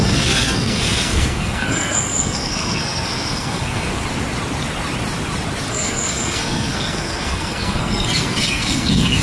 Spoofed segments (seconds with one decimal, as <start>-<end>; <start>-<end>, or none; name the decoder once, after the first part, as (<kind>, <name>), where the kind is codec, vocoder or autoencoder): 0.0-3.9 (codec, SNAC); 5.7-9.2